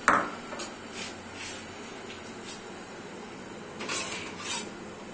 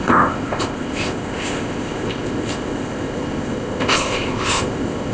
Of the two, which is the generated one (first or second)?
second